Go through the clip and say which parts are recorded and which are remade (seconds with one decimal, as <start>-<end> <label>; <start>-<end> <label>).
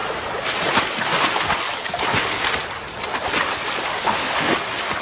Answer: 0.0-3.9 recorded; 3.9-4.5 remade; 4.5-5.0 recorded